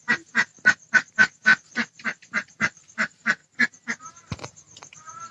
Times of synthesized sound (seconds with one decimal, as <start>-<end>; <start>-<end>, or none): 0.0-0.5; 1.1-3.4; 4.1-5.3